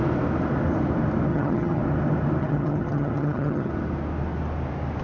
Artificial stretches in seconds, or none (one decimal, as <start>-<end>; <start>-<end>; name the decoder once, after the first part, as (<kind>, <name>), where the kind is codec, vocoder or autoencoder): 1.3-1.8 (vocoder, HiFi-GAN); 2.4-3.7